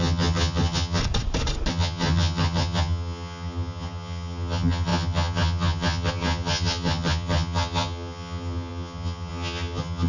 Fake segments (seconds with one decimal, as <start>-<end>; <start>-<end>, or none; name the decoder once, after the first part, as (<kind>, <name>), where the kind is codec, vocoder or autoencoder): 0.0-1.0 (vocoder, HiFi-GAN); 1.7-10.1